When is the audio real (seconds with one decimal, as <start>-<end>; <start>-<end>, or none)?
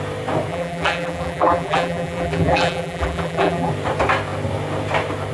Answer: 0.0-0.5; 3.7-5.3